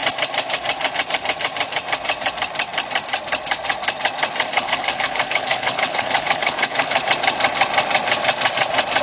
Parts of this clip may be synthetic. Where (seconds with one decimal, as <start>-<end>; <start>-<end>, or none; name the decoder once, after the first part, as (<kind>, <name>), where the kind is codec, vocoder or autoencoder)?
4.5-7.1 (codec, HILCodec)